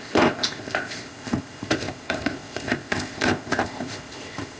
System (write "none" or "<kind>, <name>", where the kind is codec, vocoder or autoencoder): codec, ZipCodec